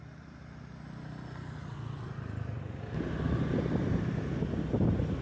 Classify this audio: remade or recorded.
recorded